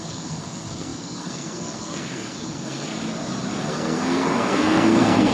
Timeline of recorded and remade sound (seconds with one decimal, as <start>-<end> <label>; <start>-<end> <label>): 0.0-2.9 remade; 2.9-3.6 recorded; 3.6-5.3 remade